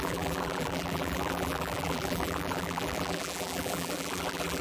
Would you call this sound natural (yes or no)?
no